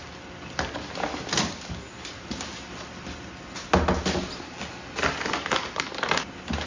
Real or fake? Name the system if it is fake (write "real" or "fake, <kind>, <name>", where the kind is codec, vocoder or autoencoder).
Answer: real